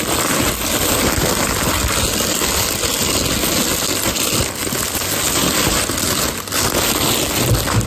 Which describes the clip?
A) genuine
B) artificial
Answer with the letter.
A